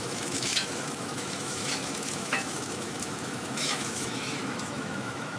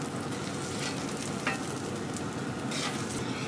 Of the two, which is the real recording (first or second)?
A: second